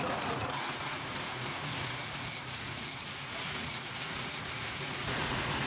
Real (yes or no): no